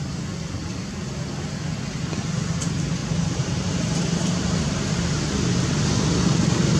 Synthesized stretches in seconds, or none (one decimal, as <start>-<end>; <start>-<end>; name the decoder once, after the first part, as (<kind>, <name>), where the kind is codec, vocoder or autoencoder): 3.0-4.8 (vocoder, BigVGAN v2)